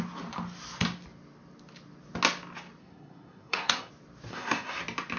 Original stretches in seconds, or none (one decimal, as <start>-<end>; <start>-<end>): 0.0-2.8; 3.9-4.3; 4.8-5.2